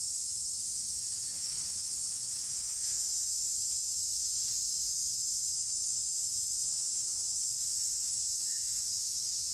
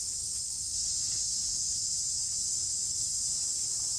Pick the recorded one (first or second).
second